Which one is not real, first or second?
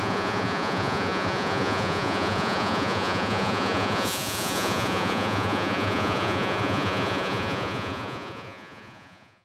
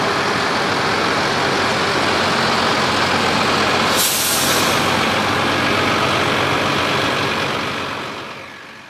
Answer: first